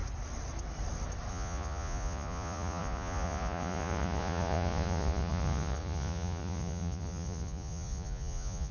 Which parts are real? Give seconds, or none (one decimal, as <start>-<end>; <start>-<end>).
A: 0.0-1.3